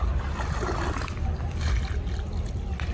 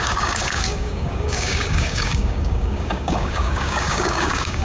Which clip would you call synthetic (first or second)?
second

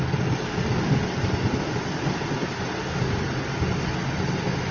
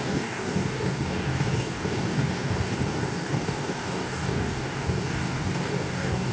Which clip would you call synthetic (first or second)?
second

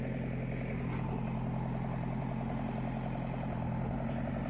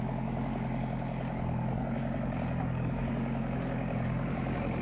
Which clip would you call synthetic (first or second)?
second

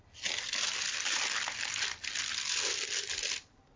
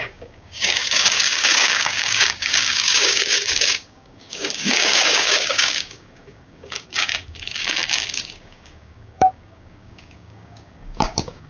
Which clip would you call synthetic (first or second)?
second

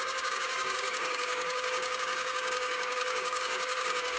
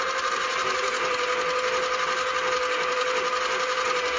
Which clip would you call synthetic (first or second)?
first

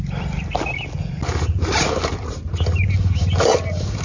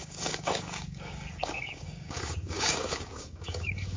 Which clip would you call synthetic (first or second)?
second